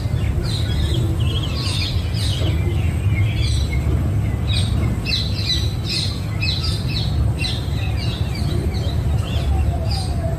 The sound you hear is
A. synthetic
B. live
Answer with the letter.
B